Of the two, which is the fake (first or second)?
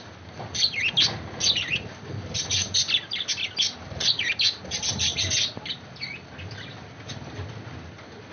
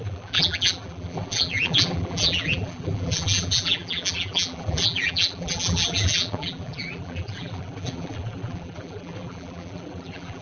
second